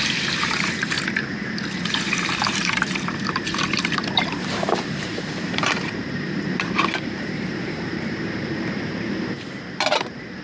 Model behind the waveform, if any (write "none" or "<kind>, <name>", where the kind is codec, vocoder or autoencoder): vocoder, BigVGAN v2